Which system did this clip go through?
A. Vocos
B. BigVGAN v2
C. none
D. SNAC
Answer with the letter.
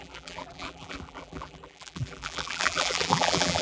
B